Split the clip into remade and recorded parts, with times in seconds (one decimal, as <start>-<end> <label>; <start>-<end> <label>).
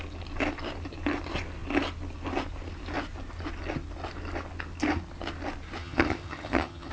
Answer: 0.0-5.8 recorded; 5.8-6.9 remade